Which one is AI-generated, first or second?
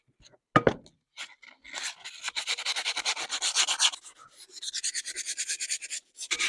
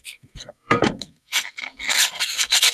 second